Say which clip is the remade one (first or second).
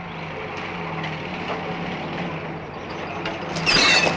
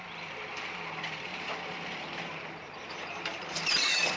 second